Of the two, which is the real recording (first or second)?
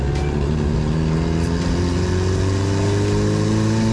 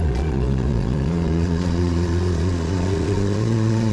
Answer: first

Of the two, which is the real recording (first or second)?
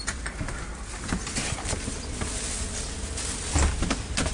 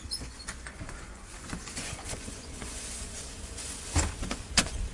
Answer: first